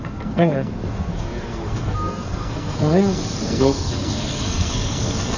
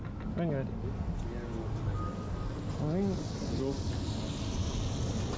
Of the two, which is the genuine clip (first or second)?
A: second